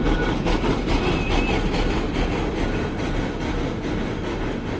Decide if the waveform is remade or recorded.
recorded